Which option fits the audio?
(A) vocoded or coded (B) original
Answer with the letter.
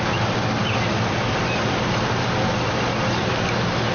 B